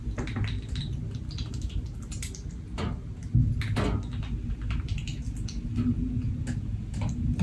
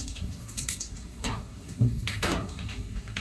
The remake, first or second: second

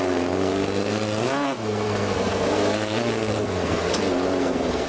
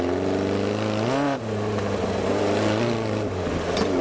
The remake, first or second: first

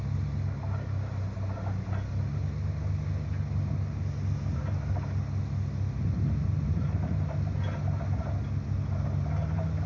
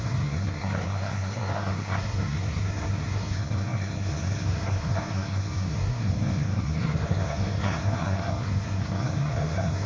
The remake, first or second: second